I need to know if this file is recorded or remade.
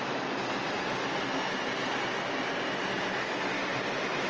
recorded